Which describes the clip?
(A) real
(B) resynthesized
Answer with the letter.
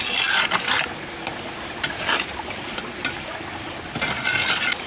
A